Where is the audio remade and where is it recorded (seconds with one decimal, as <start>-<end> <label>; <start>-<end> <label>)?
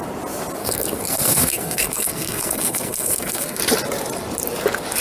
0.0-0.6 recorded; 0.6-3.6 remade; 3.6-5.0 recorded